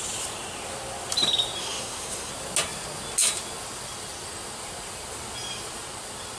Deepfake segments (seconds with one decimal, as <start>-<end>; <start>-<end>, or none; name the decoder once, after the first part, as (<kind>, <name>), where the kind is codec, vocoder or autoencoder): 1.6-2.3 (codec, SNAC)